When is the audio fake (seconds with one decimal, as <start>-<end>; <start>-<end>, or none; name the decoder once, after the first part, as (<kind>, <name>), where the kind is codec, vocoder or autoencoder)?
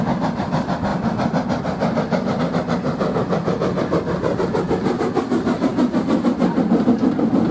none